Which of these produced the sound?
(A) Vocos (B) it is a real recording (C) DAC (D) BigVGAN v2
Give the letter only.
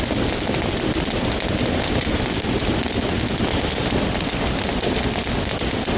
B